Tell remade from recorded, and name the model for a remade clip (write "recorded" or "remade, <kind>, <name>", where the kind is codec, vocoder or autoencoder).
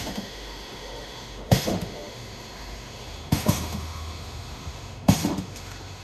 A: remade, autoencoder, DAC-VAE